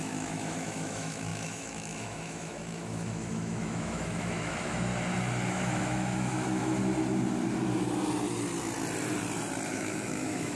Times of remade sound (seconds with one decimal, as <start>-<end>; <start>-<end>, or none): 0.0-4.9; 5.5-6.8; 9.7-10.6